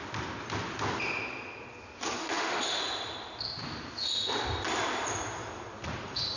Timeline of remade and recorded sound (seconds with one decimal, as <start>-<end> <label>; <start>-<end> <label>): 0.0-2.2 recorded; 2.2-2.8 remade; 2.8-6.4 recorded